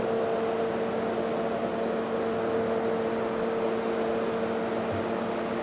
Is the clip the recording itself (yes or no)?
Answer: yes